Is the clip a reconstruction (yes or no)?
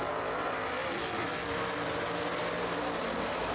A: no